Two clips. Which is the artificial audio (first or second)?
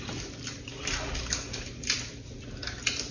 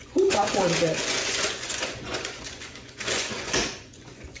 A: second